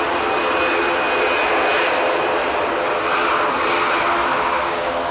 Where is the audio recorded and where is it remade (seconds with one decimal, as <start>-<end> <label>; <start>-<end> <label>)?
0.0-4.2 recorded; 4.2-5.1 remade